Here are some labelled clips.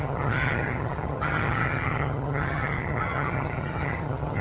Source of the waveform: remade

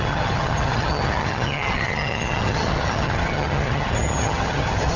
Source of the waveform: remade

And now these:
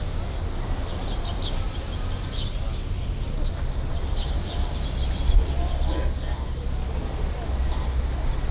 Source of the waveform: recorded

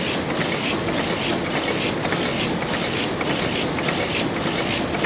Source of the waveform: recorded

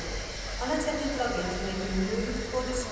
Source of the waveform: recorded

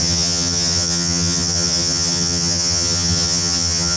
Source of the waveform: remade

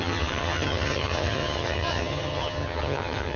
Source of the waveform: remade